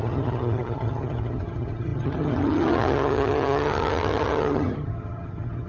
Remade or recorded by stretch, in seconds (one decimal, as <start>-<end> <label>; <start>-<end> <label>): 0.0-5.7 remade